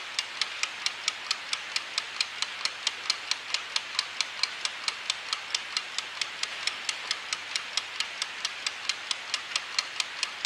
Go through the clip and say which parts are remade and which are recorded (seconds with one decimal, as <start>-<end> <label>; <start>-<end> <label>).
0.0-10.5 recorded